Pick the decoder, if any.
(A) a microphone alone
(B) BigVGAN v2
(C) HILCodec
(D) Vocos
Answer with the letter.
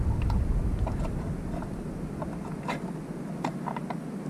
A